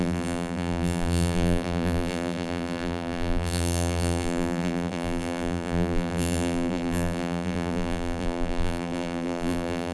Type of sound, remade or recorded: remade